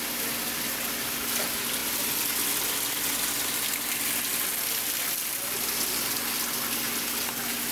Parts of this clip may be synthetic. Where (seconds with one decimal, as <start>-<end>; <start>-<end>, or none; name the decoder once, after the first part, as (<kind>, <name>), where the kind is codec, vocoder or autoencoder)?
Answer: none